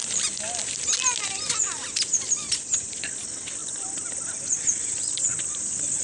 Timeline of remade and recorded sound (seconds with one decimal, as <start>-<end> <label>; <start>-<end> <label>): 0.0-6.0 recorded